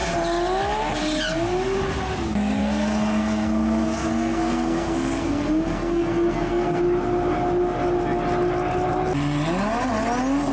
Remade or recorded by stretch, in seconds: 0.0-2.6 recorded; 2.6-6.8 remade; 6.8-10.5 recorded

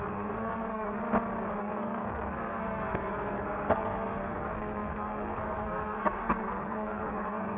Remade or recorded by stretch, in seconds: 0.0-1.0 remade; 1.0-1.6 recorded; 1.6-7.6 remade

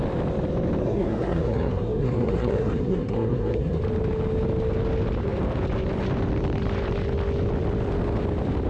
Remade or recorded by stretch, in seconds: 0.0-0.8 recorded; 0.8-3.8 remade; 3.8-8.7 recorded

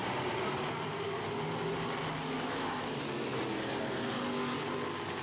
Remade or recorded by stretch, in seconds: 0.0-5.2 recorded

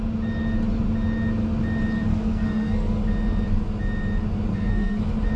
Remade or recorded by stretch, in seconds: 0.0-2.1 recorded; 2.1-3.0 remade; 3.0-4.5 recorded; 4.5-5.0 remade; 5.0-5.4 recorded

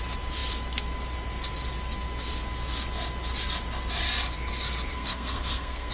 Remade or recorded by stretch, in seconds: 0.0-4.9 recorded; 4.9-5.9 remade